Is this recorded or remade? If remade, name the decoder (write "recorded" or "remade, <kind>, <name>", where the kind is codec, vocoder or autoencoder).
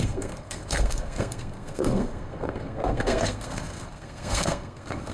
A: remade, codec, SNAC